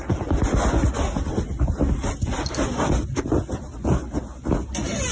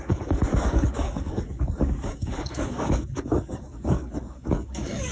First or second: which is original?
first